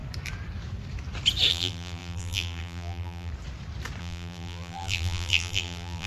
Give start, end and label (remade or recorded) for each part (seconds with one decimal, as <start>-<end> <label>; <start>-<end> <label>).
0.0-1.5 recorded; 1.5-3.3 remade; 3.3-4.0 recorded; 4.0-6.1 remade